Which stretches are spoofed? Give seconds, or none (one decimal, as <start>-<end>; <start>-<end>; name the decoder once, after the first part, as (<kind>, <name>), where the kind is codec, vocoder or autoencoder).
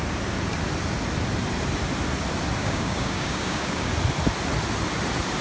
2.6-3.9 (codec, DAC)